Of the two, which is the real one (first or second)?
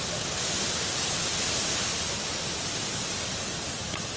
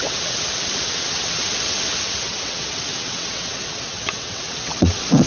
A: first